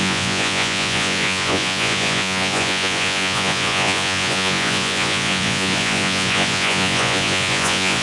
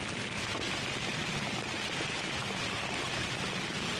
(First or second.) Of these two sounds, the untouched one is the second